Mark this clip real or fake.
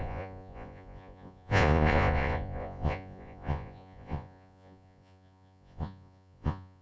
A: fake